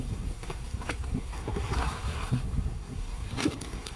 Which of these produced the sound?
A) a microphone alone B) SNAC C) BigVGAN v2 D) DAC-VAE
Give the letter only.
B